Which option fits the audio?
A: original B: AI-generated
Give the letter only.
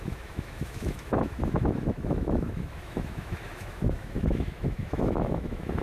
B